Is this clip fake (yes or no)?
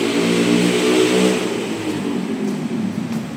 no